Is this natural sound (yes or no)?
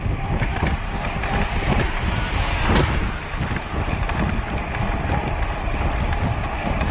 yes